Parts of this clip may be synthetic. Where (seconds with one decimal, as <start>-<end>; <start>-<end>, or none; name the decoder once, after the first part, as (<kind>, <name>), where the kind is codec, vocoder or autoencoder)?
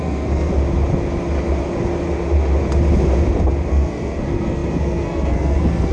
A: 0.0-0.5 (codec, SNAC); 3.7-5.9